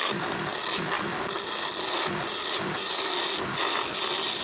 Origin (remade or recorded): recorded